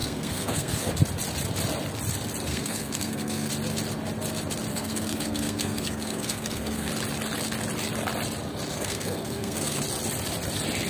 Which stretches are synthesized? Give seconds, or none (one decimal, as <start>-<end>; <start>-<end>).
0.0-0.9; 2.5-3.5; 4.7-6.9; 8.7-9.8